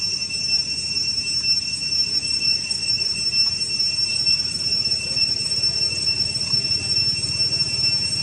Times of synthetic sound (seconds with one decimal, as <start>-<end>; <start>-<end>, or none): 2.0-3.2; 4.1-7.0